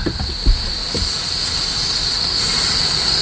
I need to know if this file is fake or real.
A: real